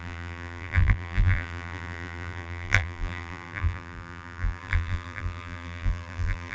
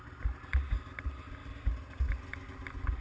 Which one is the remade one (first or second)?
first